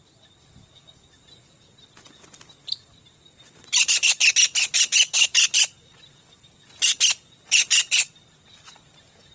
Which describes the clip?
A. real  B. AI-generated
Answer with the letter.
A